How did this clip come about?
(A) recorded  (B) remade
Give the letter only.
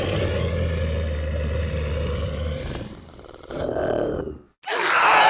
A